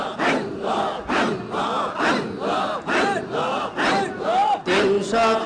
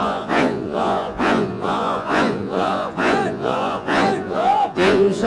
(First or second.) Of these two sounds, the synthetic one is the second